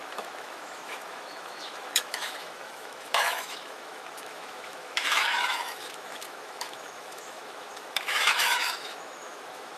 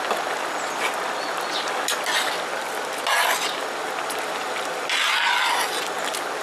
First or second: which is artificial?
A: first